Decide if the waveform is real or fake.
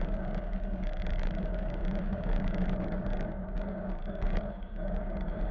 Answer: fake